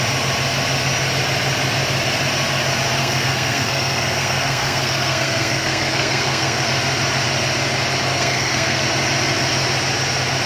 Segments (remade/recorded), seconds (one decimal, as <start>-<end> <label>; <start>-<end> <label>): 0.0-3.0 recorded; 3.0-6.7 remade; 6.7-8.1 recorded; 8.1-8.8 remade; 8.8-10.5 recorded